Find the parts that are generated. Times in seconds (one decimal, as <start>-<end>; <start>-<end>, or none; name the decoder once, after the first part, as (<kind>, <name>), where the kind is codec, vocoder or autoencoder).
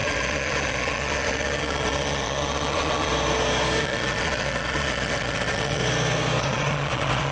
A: 0.0-3.1 (vocoder, Vocos); 3.8-5.8; 6.4-7.3